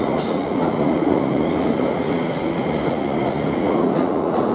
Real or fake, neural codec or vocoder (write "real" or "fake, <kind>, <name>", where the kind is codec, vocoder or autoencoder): fake, vocoder, Vocos